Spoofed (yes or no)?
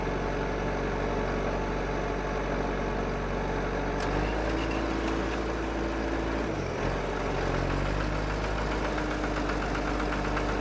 no